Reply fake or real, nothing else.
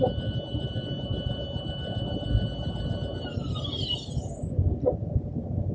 real